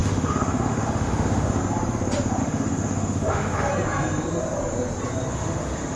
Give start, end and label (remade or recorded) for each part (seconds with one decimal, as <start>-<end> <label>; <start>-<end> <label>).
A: 0.0-1.6 remade; 1.6-2.4 recorded; 2.4-3.7 remade; 3.7-5.3 recorded; 5.3-6.0 remade